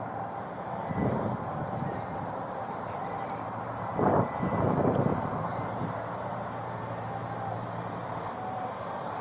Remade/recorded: remade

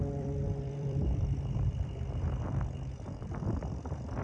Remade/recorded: remade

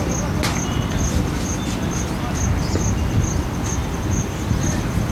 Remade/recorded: recorded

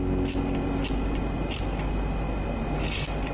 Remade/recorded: recorded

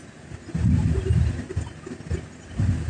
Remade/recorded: recorded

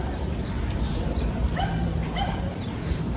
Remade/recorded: remade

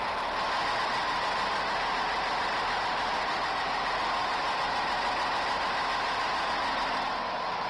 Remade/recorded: recorded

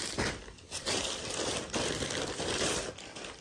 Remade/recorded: remade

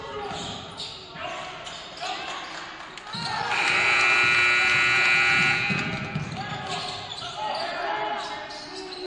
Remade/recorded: recorded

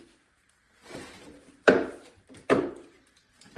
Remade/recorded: remade